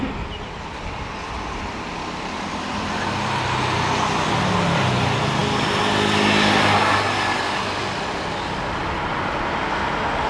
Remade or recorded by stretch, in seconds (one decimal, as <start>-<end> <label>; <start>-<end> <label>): 0.0-10.3 recorded